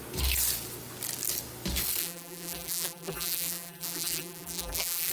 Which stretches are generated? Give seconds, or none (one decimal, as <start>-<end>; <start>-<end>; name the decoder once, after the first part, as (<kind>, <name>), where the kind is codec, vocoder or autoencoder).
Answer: 2.0-5.1 (vocoder, BigVGAN v2)